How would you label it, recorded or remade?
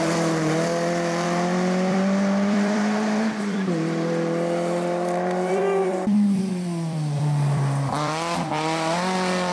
remade